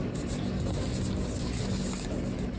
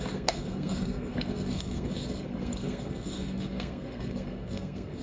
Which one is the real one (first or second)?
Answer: first